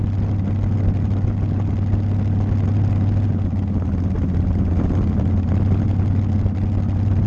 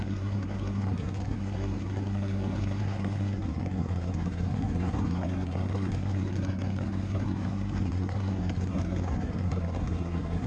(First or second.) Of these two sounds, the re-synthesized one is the second